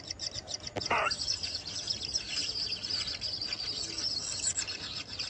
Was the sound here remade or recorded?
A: recorded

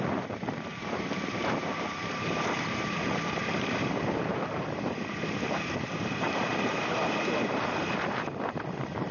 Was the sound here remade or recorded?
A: remade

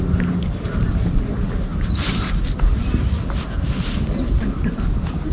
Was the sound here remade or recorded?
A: recorded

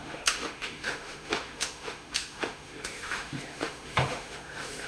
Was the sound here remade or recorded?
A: remade